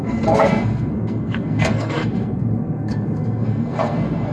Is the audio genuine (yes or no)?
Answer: no